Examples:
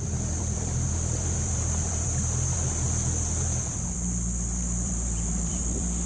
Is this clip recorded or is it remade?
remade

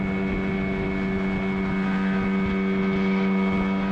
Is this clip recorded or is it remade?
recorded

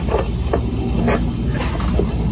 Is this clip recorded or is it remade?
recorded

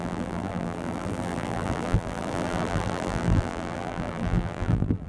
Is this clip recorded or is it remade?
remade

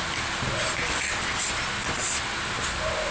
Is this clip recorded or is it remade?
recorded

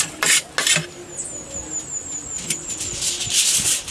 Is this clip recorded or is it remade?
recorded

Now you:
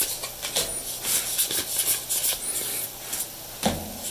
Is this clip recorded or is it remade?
recorded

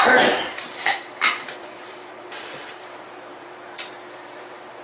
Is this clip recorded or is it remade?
remade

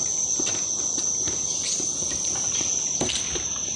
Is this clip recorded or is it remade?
recorded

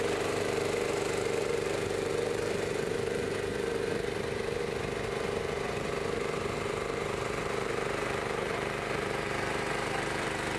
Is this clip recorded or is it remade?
remade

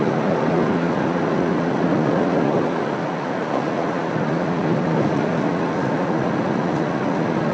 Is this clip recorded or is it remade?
remade